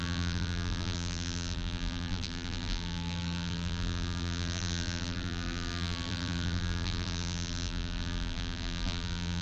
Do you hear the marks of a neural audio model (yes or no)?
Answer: yes